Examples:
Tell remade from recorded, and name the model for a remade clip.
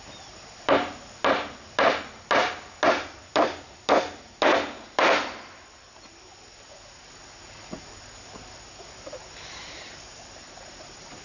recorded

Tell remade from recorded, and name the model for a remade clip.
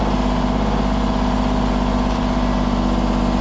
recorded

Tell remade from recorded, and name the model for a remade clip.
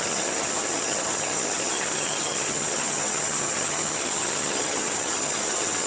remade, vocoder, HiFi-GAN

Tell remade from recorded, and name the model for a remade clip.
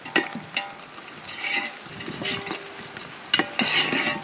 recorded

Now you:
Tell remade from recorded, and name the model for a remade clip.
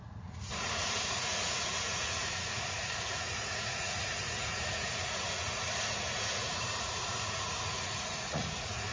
remade, vocoder, Vocos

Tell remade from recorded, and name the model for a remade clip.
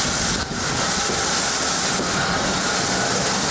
recorded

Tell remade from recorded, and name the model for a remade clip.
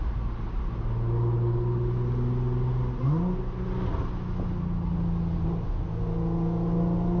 recorded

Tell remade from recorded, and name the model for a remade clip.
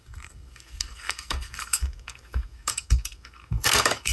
remade, codec, SNAC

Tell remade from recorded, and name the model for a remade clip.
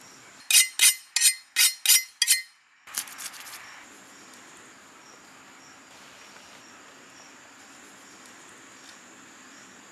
recorded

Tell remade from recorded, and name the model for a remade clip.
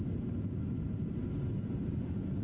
recorded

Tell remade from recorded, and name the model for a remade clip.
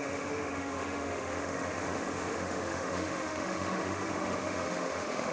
remade, autoencoder, DAC-VAE